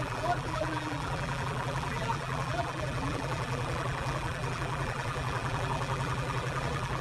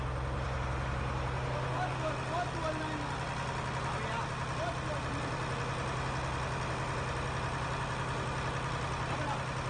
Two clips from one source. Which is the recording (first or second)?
second